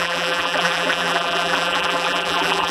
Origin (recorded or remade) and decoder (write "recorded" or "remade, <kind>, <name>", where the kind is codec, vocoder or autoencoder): remade, vocoder, BigVGAN v2